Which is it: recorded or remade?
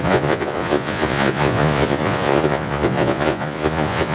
remade